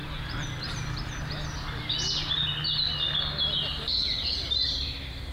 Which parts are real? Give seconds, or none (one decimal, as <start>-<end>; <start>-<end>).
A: 0.0-5.3